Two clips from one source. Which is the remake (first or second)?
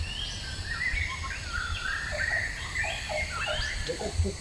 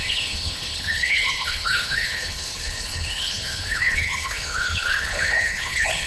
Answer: second